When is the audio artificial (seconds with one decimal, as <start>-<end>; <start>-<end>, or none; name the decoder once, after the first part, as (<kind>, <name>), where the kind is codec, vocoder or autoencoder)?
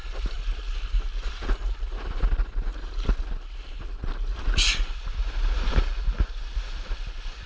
none